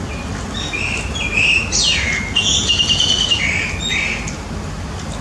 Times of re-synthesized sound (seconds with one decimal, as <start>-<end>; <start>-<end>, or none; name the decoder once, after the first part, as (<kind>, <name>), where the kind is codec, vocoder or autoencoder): none